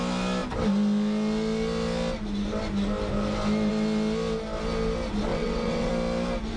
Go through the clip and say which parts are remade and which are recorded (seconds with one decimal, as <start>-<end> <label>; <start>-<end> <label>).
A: 0.0-5.3 recorded; 5.3-5.9 remade; 5.9-6.6 recorded